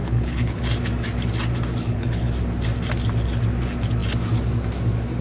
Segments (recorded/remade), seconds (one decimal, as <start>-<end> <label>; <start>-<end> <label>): 0.0-0.6 remade; 0.6-1.8 recorded; 1.8-2.3 remade; 2.3-5.2 recorded